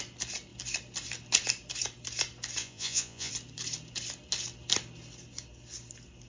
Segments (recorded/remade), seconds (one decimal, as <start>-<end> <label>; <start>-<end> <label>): 0.0-2.6 recorded; 2.6-3.3 remade; 3.3-6.3 recorded